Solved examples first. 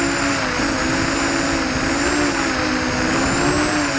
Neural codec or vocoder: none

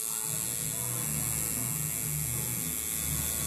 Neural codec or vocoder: none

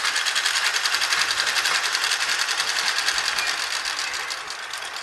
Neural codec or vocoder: none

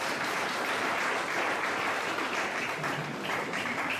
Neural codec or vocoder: vocoder, BigVGAN v2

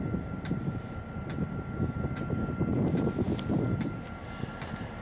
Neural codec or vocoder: none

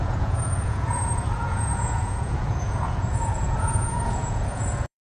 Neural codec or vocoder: vocoder, Vocos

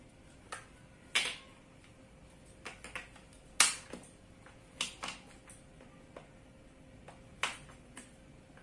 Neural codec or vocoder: none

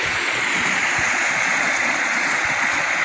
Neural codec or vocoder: vocoder, Vocos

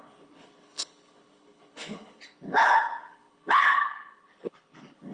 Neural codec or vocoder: codec, HILCodec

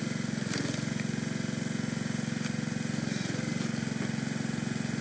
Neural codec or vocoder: none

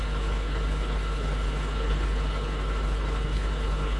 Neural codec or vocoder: codec, HILCodec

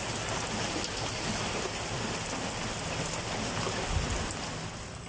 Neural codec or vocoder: none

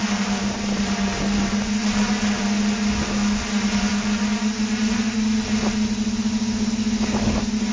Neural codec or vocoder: none